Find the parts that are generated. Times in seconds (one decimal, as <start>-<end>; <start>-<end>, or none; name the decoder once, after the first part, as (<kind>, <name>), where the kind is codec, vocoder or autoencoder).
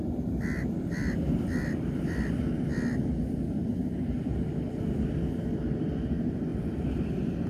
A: none